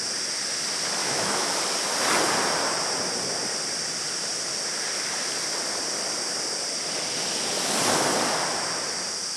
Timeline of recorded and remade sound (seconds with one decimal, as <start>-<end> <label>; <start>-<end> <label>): 0.0-1.0 recorded; 1.0-1.6 remade; 1.6-9.4 recorded